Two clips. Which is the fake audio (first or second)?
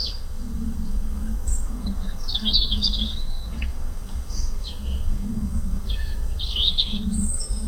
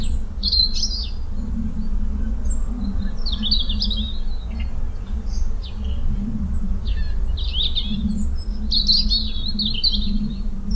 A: first